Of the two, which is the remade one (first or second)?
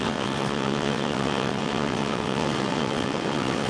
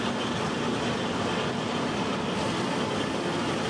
first